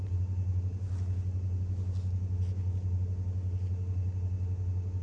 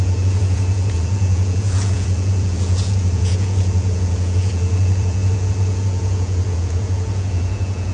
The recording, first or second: first